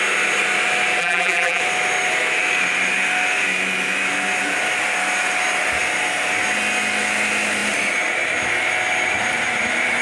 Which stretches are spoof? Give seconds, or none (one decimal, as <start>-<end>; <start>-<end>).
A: 1.0-1.6